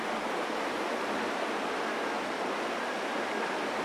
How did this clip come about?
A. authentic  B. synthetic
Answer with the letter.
A